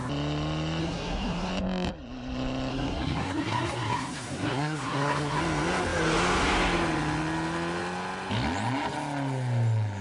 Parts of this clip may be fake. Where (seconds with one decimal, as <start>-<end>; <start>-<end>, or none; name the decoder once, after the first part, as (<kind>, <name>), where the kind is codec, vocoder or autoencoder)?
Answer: 0.8-1.5 (codec, SNAC); 2.7-5.4